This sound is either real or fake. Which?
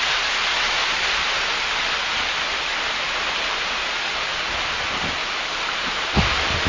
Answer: real